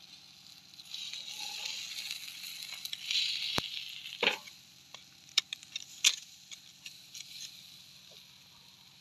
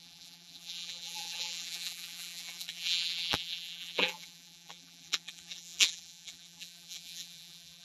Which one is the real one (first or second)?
first